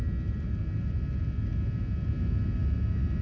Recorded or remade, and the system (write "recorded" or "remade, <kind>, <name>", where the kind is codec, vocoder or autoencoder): recorded